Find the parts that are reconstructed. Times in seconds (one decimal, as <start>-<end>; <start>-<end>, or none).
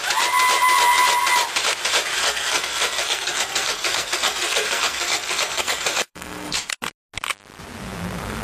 2.2-6.8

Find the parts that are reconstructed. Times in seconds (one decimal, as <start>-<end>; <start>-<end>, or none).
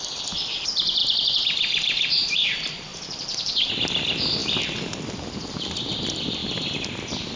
0.0-4.4; 5.1-6.4